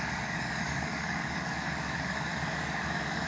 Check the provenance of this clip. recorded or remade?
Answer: remade